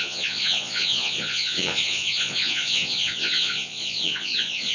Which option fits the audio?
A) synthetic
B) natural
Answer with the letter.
A